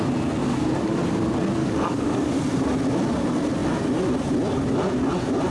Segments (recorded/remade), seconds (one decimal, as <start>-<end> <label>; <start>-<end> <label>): 0.0-0.4 recorded; 0.4-1.0 remade; 1.0-1.6 recorded; 1.6-2.3 remade; 2.3-5.5 recorded